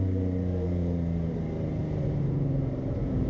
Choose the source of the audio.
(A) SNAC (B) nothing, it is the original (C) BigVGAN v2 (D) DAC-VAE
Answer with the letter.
C